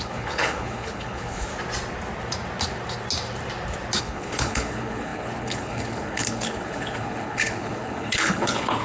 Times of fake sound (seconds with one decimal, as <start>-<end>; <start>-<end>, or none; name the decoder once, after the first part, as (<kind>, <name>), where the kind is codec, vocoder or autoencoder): 0.0-1.5 (codec, HILCodec); 4.0-8.8

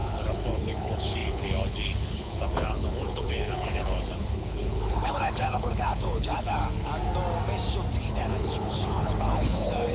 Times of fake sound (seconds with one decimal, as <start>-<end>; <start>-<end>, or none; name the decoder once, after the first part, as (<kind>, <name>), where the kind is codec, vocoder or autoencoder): 0.0-6.9 (codec, HILCodec); 8.0-9.9